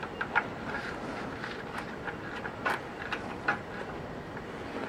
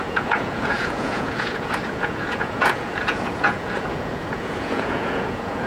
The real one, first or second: first